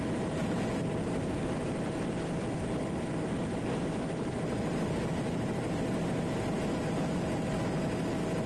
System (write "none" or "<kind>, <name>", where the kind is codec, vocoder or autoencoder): none